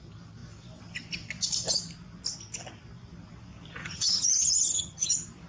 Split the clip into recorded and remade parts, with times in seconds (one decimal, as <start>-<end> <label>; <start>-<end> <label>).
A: 0.0-3.8 recorded; 3.8-5.1 remade; 5.1-5.5 recorded